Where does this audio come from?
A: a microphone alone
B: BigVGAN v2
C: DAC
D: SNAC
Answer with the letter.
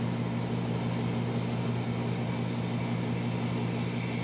A